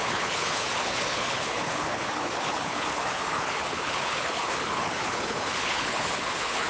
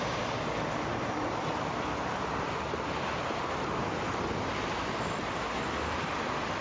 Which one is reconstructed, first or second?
first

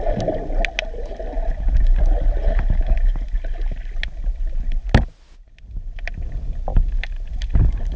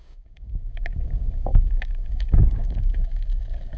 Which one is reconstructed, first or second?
second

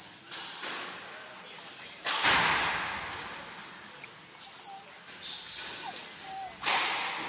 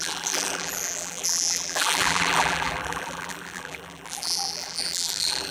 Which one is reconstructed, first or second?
second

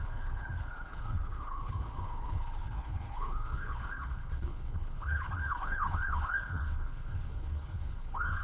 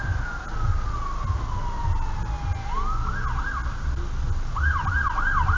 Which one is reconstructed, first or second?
first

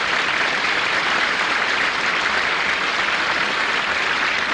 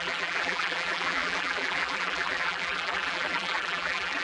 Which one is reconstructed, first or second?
second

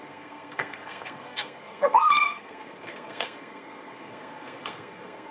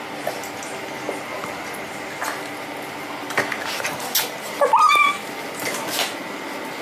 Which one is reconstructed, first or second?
first